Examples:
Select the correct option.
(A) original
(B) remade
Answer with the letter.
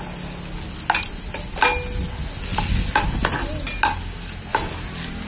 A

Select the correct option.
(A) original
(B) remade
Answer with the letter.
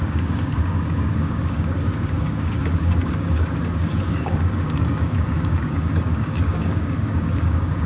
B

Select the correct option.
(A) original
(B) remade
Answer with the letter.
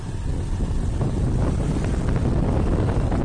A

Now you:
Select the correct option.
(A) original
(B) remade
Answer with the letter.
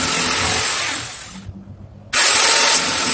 A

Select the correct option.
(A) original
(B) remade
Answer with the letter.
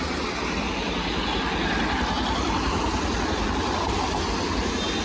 A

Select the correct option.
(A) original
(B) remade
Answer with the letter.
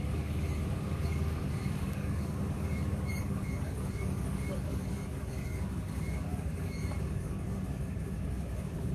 B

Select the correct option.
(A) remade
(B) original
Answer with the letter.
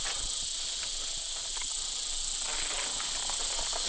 B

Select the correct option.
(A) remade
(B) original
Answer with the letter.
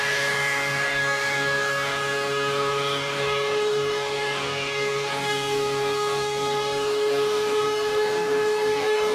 A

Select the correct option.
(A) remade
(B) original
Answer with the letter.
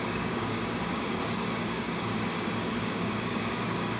A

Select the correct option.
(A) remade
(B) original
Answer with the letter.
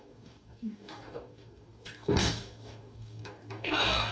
A